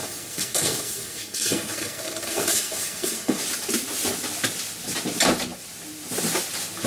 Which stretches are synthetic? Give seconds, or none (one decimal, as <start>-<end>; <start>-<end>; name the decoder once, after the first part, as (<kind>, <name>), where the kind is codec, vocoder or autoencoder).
0.0-3.4 (codec, SNAC)